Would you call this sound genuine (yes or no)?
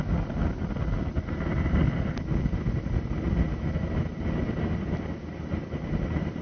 yes